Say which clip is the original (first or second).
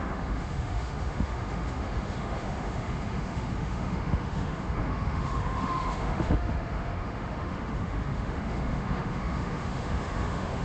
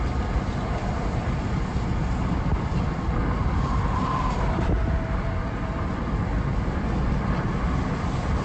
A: second